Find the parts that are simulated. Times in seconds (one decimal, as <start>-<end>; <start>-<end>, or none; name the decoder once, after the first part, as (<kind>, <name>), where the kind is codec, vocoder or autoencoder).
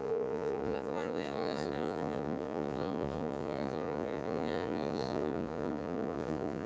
0.0-6.7 (vocoder, Vocos)